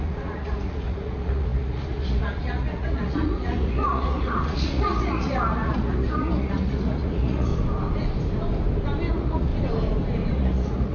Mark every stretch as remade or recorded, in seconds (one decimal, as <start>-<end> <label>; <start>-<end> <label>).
0.0-7.5 remade; 7.5-9.1 recorded; 9.1-9.5 remade; 9.5-10.3 recorded; 10.3-10.9 remade